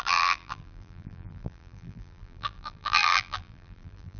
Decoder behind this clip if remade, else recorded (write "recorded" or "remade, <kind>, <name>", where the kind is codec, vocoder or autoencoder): remade, vocoder, BigVGAN v2